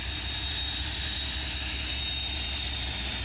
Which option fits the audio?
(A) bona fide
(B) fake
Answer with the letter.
A